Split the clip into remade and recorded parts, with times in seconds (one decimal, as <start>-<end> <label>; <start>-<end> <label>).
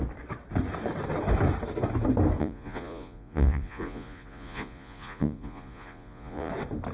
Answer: 0.0-2.4 recorded; 2.4-6.5 remade; 6.5-6.9 recorded